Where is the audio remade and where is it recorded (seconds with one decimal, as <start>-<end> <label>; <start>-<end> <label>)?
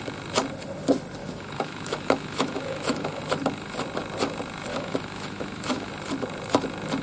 0.0-1.2 recorded; 1.2-3.2 remade; 3.2-4.7 recorded; 4.7-5.9 remade; 5.9-7.0 recorded